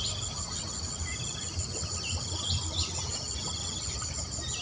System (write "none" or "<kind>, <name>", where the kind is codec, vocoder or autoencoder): none